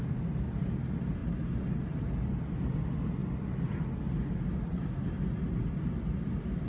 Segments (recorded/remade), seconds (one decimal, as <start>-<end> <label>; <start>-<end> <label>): 0.0-6.7 recorded